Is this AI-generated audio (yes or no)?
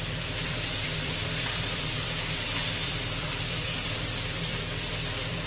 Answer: yes